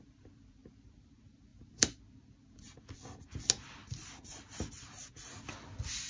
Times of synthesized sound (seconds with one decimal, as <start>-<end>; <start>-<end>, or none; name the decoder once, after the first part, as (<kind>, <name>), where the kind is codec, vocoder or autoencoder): 1.5-2.0 (vocoder, BigVGAN v2); 3.8-4.6